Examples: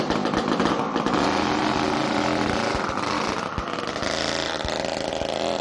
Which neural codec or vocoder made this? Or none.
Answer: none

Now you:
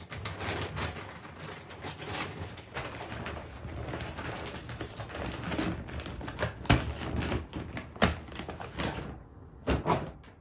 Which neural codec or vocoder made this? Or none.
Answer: none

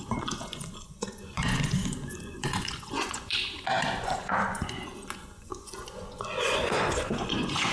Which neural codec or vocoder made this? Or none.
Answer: vocoder, Vocos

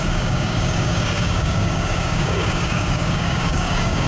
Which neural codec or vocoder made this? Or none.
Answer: codec, DAC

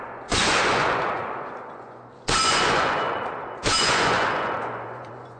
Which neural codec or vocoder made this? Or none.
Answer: vocoder, Vocos